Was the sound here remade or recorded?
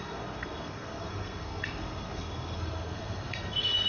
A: remade